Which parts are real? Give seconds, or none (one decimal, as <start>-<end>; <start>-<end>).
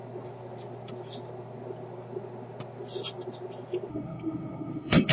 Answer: 0.0-3.9